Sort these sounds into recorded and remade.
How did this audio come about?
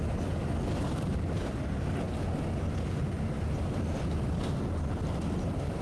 recorded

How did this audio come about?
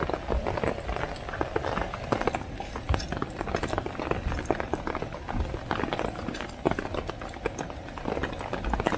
recorded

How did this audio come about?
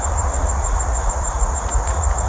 remade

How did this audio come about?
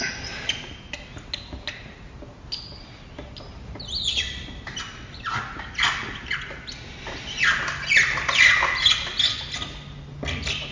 recorded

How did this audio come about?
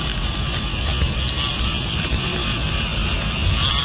recorded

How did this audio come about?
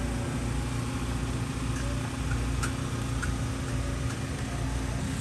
recorded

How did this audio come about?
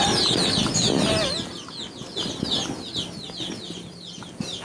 recorded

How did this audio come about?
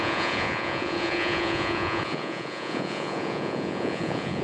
remade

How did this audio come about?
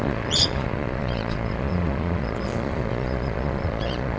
remade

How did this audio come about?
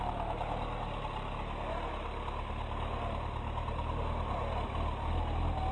recorded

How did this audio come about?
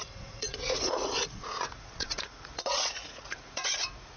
remade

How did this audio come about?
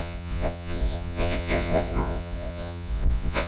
remade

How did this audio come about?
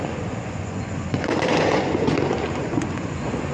remade